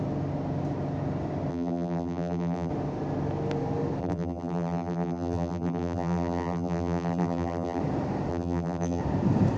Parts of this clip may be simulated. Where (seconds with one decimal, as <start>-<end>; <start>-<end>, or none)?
1.5-2.7; 4.0-7.8; 8.3-9.0